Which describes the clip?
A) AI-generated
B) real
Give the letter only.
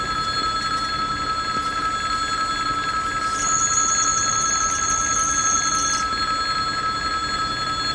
B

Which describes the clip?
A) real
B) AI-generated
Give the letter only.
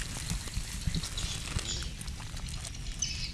A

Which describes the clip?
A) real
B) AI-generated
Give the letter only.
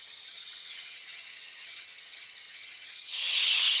B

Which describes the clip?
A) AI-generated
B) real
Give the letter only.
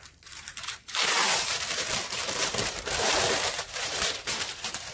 A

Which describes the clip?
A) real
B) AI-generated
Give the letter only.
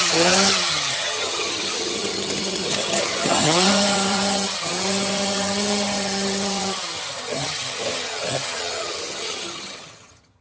B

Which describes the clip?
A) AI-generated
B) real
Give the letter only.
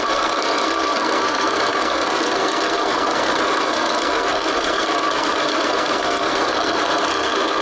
A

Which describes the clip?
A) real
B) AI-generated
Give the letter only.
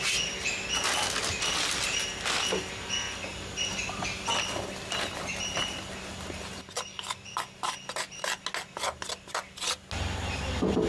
A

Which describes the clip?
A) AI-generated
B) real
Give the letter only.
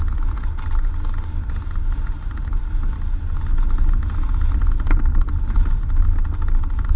B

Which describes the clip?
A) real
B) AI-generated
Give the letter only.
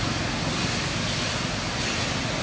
A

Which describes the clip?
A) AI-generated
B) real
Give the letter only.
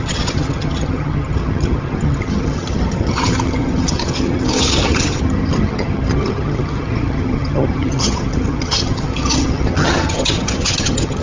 A